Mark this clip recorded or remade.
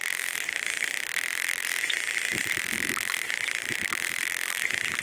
remade